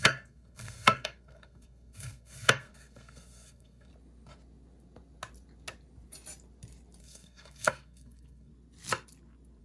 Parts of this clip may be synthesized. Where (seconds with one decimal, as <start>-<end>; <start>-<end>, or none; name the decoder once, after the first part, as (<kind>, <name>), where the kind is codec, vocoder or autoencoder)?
0.0-3.9 (codec, SNAC); 7.0-8.5